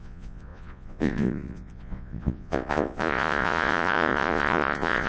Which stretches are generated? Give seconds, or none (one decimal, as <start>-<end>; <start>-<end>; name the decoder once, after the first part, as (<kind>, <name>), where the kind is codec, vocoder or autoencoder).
0.0-5.1 (vocoder, Vocos)